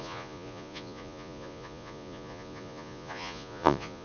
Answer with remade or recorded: remade